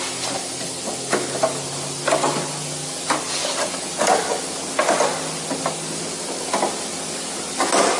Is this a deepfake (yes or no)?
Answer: no